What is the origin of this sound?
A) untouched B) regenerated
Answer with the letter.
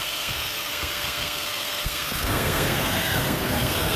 B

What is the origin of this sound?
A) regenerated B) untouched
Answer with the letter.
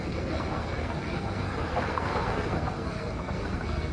A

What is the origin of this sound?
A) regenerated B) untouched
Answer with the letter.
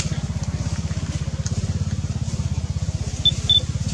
B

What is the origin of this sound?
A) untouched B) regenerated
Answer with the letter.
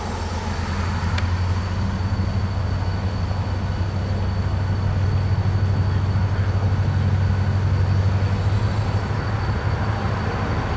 A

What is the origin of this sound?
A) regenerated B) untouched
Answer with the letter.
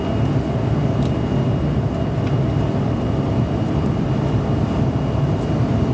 B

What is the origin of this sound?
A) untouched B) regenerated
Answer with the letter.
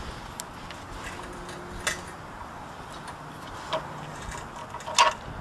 A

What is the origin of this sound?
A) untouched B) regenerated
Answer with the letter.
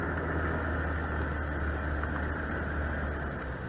A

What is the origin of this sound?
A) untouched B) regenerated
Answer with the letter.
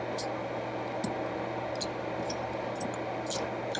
A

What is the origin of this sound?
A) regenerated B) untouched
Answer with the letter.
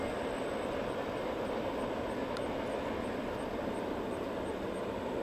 B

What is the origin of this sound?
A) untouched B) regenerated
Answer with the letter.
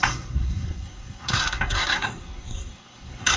B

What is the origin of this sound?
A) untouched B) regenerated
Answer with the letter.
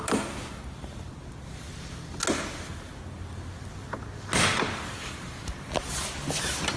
A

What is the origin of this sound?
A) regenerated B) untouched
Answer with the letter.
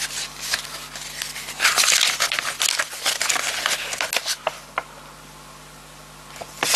B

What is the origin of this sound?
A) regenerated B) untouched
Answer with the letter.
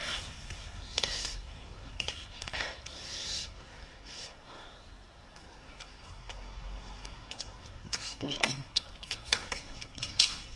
A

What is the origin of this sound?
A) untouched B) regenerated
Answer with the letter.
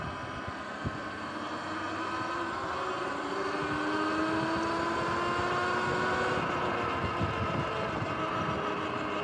A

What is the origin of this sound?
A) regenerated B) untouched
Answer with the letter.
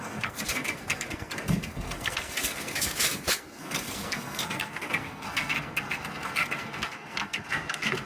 A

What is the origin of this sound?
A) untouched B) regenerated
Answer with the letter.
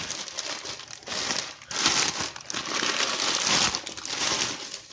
A